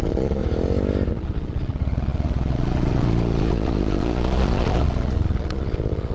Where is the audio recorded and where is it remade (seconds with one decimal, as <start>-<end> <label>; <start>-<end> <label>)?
0.0-0.4 remade; 0.4-1.1 recorded; 1.1-6.1 remade